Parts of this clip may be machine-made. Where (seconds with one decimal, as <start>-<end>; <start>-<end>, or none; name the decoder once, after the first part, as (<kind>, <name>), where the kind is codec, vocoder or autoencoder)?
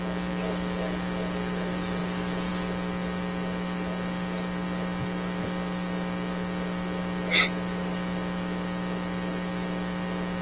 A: none